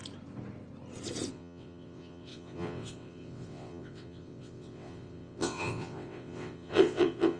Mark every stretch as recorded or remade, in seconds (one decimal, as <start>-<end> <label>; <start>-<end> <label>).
0.0-1.3 recorded; 1.3-7.4 remade